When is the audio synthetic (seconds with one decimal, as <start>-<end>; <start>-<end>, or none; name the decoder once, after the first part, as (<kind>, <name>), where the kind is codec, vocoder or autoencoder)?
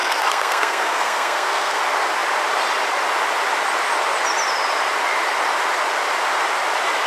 0.0-1.8 (codec, SNAC)